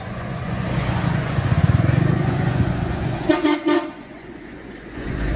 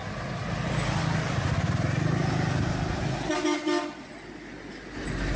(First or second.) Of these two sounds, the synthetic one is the first